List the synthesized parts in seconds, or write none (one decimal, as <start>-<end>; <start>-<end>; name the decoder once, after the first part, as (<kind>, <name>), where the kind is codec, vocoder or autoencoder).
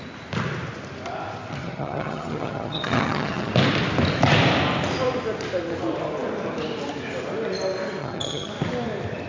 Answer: 1.6-3.5 (vocoder, HiFi-GAN); 8.0-8.5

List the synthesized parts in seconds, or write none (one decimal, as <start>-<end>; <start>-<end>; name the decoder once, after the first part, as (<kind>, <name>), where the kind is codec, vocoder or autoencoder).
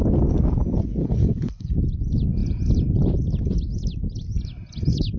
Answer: 1.0-1.7 (codec, HILCodec)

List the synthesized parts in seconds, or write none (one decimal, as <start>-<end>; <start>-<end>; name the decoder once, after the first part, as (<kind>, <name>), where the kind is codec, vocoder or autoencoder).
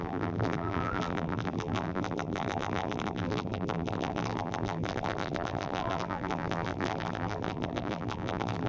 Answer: 0.0-8.7 (vocoder, BigVGAN v2)